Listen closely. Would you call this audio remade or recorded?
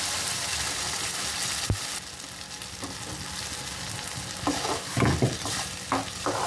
recorded